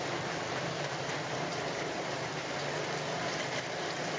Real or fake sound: fake